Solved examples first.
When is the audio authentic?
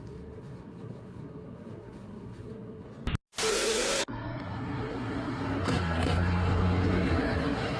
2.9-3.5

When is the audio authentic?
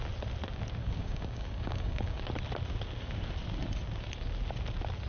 0.0-0.8; 2.2-5.1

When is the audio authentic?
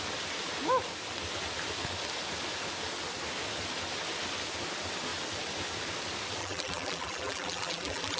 0.0-6.4